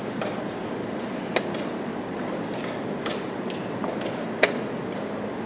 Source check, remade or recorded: recorded